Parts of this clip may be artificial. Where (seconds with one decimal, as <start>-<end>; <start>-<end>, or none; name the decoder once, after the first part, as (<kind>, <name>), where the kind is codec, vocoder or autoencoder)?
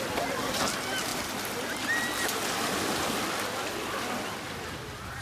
none